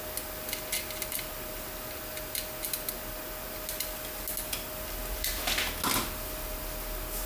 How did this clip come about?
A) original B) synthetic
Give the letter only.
A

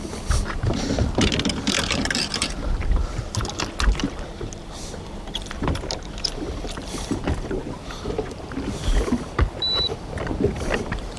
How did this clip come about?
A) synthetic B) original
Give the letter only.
A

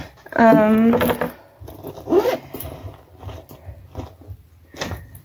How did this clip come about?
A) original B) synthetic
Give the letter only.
A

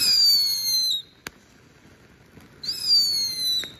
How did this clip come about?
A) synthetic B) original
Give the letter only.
B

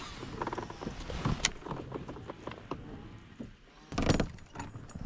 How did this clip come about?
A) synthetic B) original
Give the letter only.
B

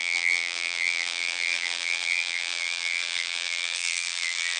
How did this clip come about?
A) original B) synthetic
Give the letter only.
B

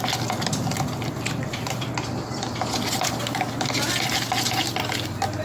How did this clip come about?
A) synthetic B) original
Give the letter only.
B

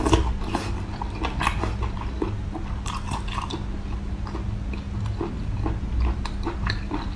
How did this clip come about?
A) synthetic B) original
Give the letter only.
B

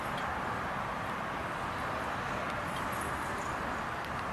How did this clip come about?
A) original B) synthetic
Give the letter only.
A